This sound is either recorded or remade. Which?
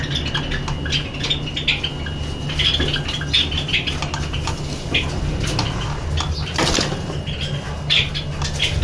recorded